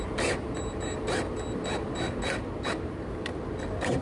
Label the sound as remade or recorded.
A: recorded